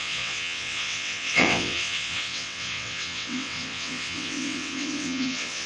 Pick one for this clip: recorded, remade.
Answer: remade